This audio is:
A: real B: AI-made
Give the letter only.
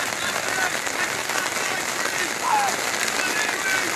A